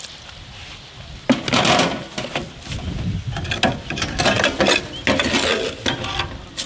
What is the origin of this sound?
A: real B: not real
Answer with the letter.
A